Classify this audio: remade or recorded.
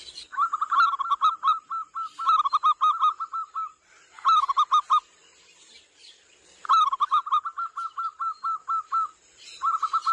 recorded